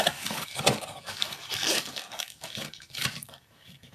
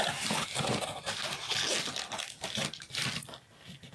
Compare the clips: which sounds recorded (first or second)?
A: second